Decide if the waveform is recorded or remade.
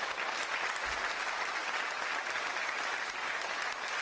recorded